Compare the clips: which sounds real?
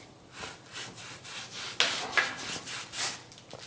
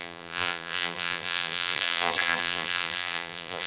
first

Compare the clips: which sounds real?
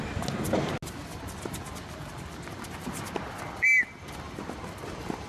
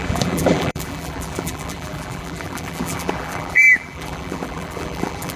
first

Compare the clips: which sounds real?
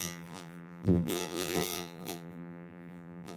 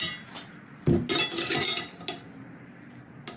second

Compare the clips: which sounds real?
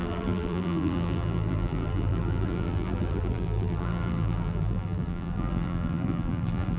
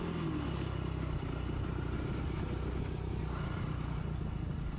second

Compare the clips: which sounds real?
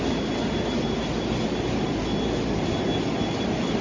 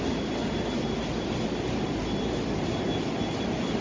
first